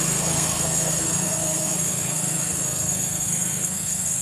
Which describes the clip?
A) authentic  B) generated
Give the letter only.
B